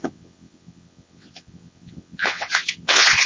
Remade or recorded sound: remade